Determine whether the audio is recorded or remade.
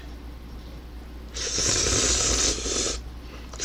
recorded